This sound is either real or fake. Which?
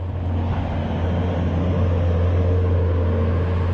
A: real